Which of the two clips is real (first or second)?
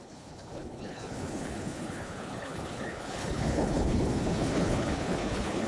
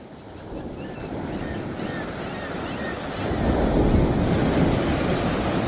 second